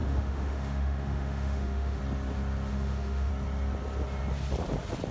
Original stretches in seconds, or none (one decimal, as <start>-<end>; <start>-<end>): 2.0-2.7; 3.3-5.1